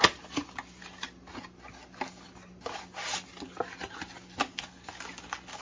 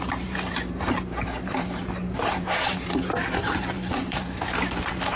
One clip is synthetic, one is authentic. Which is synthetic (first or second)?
second